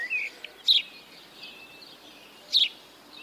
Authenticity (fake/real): real